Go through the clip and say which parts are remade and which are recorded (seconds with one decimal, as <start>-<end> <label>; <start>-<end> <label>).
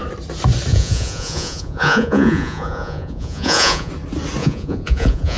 0.0-0.7 recorded; 0.7-3.9 remade; 3.9-4.4 recorded; 4.4-5.4 remade